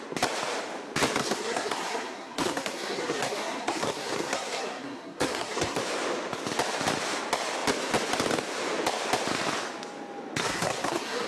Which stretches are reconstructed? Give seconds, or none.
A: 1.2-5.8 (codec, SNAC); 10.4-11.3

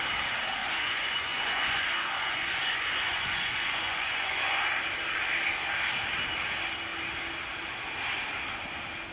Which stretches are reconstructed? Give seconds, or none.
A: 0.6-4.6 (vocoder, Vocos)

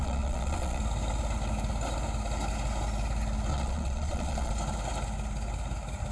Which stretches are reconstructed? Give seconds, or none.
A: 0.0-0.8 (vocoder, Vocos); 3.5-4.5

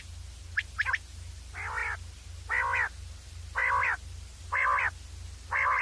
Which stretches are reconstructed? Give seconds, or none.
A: none

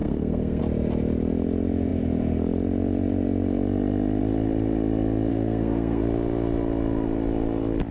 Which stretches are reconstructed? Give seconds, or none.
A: 0.0-0.6 (codec, SNAC); 5.3-6.0

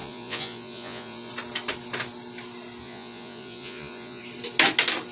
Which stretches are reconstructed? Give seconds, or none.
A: 0.0-1.3 (vocoder, Vocos); 2.8-4.2

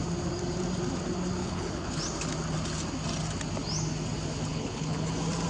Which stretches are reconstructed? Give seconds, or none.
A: 1.4-2.0 (codec, HILCodec); 4.5-5.1

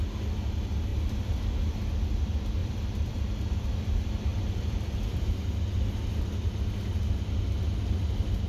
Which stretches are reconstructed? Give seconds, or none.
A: 2.6-3.7 (vocoder, BigVGAN v2); 4.3-5.2